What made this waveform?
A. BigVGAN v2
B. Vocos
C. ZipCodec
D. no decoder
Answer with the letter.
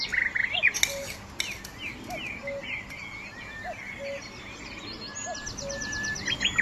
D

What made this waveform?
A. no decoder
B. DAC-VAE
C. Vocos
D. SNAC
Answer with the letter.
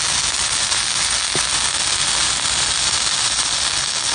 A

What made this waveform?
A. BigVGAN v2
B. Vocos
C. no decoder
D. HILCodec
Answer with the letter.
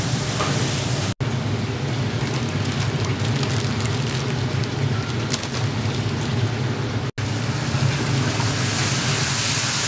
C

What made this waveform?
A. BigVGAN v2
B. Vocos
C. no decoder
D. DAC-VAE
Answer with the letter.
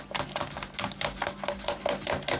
C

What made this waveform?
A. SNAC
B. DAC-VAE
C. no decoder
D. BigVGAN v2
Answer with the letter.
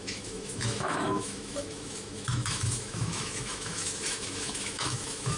B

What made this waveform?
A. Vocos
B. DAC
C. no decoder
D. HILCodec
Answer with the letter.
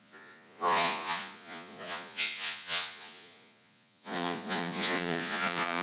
A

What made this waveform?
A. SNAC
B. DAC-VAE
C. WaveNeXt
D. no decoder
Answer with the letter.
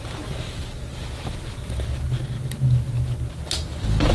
D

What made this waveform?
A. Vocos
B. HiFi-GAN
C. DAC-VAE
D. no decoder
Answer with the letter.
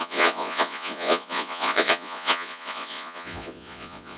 A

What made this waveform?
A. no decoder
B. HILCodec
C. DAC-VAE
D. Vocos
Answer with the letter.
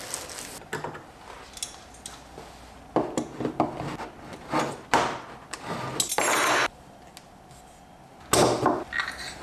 A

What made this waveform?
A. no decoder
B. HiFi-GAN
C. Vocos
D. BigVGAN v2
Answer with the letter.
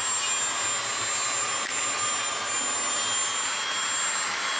A